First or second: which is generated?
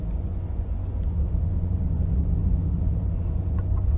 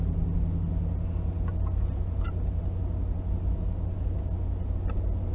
first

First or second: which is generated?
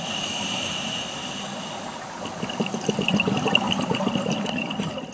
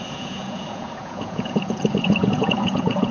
second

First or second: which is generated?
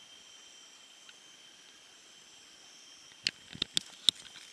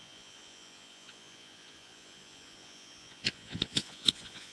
second